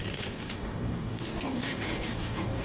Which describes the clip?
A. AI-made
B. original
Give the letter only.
A